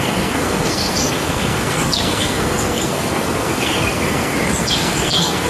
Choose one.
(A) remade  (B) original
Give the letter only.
A